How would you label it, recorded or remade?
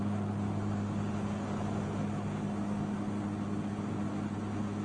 recorded